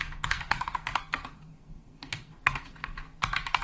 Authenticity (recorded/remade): remade